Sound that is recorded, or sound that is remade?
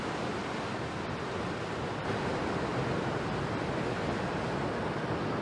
recorded